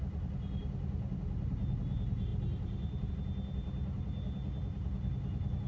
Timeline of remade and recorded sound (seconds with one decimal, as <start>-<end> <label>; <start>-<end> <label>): 0.0-5.7 recorded